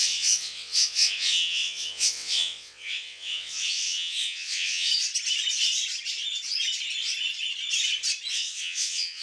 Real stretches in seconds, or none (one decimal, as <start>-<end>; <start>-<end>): 4.9-8.3